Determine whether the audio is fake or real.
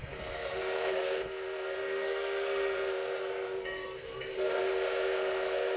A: fake